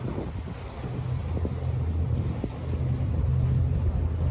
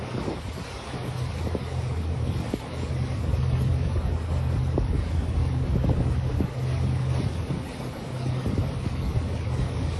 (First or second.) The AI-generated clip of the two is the second